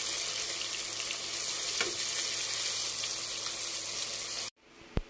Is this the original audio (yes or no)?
yes